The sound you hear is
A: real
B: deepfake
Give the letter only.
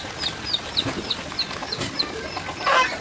B